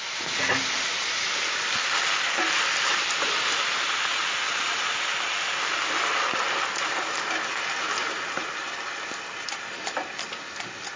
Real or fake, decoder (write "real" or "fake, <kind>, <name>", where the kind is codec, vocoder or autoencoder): real